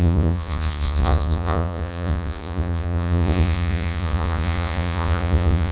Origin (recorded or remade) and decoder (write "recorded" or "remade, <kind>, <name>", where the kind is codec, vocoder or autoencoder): remade, vocoder, Vocos